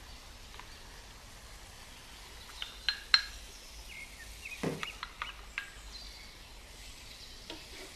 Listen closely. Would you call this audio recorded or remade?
recorded